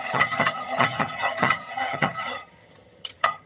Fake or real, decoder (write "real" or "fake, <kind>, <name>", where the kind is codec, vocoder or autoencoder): fake, vocoder, HiFi-GAN